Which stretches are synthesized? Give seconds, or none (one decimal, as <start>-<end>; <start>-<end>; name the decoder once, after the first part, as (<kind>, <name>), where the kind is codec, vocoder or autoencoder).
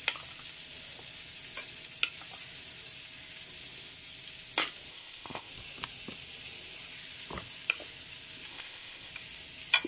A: 4.9-5.5 (codec, ZipCodec); 8.5-9.1